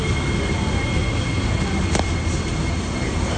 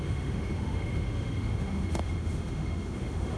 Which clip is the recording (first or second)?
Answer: first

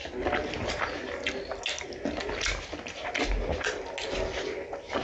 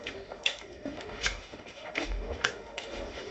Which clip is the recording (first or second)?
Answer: first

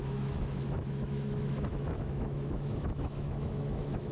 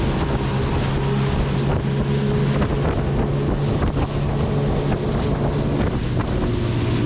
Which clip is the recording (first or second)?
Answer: second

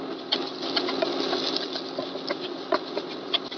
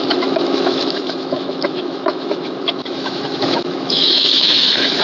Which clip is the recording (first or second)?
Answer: first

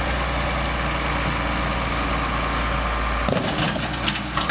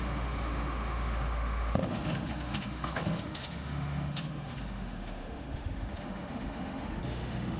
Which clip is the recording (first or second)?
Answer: first